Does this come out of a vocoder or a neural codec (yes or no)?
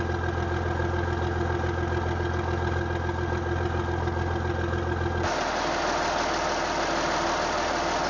no